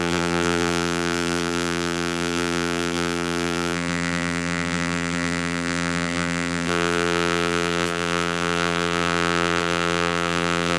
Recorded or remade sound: remade